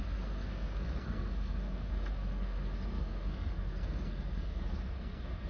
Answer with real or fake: fake